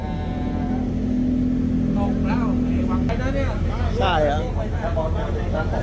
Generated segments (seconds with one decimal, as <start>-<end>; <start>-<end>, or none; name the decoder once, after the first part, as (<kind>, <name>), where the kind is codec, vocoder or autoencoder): none